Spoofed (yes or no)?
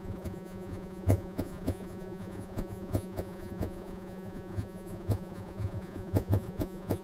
yes